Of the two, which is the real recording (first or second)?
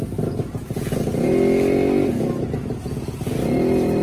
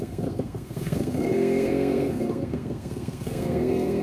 first